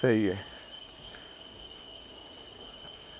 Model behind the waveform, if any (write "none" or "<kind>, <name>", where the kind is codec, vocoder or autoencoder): codec, DAC